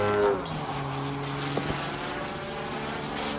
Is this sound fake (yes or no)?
no